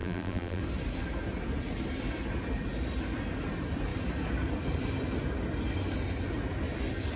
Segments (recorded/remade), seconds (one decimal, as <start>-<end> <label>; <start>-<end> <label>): 0.0-0.6 remade; 0.6-7.2 recorded